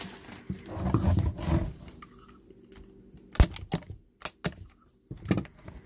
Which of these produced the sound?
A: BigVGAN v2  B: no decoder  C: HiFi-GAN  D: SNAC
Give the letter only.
B